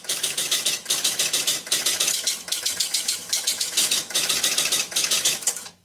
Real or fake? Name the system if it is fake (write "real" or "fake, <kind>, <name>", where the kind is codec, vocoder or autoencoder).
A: fake, autoencoder, DAC-VAE